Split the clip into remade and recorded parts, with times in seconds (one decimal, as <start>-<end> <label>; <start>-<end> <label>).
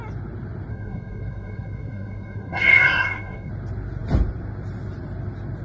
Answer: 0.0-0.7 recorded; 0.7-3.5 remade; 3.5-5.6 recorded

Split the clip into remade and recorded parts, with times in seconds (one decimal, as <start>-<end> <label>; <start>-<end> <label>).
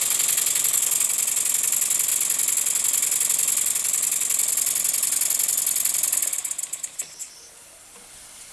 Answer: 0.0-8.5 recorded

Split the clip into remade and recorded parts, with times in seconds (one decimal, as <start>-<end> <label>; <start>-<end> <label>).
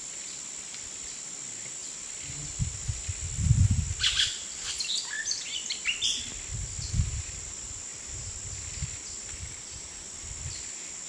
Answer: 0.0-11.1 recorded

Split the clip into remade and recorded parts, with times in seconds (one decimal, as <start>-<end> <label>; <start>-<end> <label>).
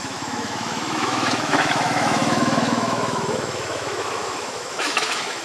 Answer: 0.0-5.4 remade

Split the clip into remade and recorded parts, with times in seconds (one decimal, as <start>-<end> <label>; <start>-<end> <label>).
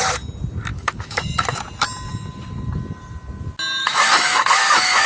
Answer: 0.0-0.7 recorded; 0.7-1.6 remade; 1.6-3.8 recorded; 3.8-5.1 remade